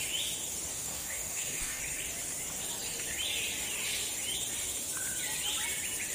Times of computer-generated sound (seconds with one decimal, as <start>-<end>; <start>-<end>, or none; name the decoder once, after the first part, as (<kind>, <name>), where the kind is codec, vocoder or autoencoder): 0.7-1.8 (codec, DAC)

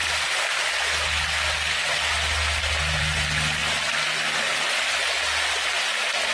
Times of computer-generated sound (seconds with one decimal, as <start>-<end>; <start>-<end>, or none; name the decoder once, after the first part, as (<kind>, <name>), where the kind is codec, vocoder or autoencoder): none

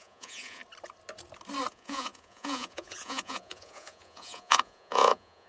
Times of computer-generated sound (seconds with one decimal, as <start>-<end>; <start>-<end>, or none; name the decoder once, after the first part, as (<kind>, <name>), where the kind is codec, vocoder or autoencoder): 0.0-0.6 (vocoder, Vocos); 1.7-5.5